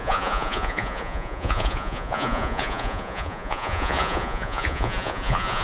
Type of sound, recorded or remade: remade